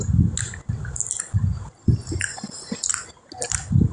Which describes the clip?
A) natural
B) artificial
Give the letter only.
A